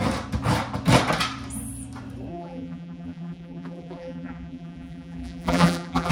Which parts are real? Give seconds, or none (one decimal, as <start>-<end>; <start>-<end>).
0.0-2.3